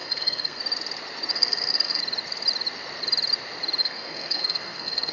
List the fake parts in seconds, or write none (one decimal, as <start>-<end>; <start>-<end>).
0.0-0.6; 1.3-2.0; 3.8-5.1